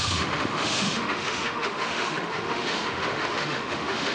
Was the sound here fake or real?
fake